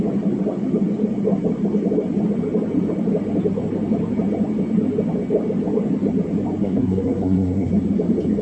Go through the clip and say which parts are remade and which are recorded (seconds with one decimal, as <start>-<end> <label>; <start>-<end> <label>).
0.0-6.6 recorded; 6.6-7.7 remade; 7.7-8.4 recorded